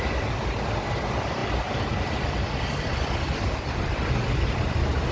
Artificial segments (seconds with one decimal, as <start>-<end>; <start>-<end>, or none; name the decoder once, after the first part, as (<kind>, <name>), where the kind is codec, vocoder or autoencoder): none